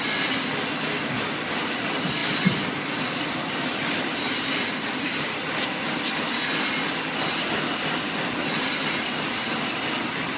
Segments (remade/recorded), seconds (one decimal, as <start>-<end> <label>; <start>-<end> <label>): 0.0-10.4 recorded